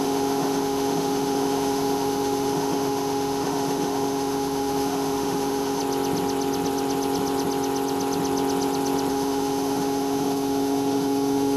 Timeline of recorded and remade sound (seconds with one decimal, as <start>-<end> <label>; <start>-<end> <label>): 0.0-5.8 remade; 5.8-9.1 recorded; 9.1-11.6 remade